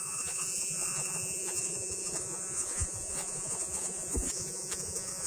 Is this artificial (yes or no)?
yes